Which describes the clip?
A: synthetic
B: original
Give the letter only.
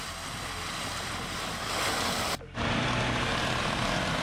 B